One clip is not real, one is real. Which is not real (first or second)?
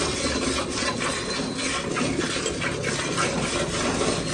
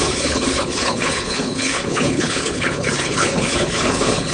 second